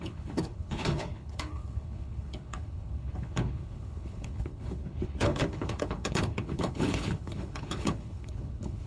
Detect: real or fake fake